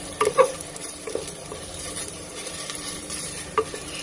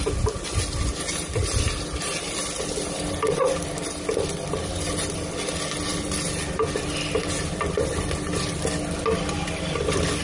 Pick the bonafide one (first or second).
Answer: second